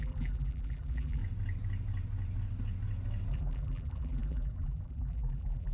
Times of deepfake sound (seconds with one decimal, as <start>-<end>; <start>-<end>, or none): 0.0-1.2; 3.3-5.7